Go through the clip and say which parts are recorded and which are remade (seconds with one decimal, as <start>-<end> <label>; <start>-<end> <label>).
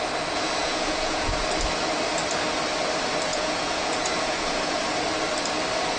0.0-0.6 recorded; 0.6-1.3 remade; 1.3-3.3 recorded; 3.3-4.8 remade; 4.8-6.0 recorded